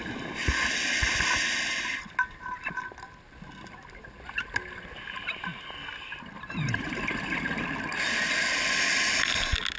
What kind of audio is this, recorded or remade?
recorded